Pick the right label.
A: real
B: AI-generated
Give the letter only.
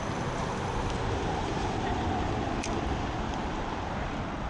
B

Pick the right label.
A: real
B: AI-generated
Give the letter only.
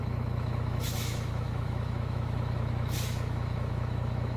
B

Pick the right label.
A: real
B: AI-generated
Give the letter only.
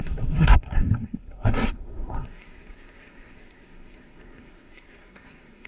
B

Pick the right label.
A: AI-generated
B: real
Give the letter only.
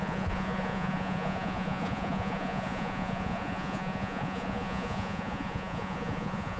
A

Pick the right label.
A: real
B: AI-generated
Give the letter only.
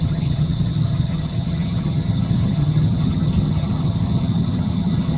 B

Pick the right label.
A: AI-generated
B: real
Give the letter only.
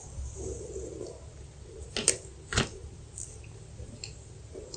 B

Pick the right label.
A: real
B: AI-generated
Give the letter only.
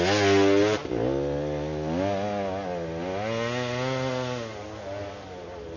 A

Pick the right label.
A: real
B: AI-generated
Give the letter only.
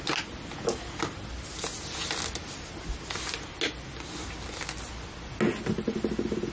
A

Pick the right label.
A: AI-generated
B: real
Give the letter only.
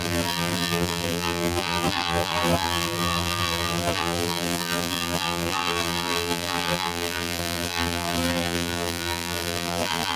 A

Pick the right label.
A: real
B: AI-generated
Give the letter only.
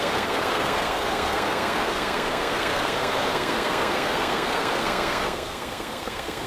B